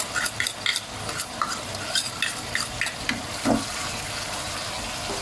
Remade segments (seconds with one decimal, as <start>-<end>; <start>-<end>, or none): none